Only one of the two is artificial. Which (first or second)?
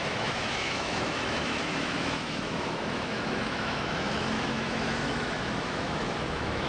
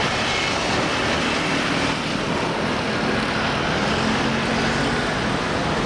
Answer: first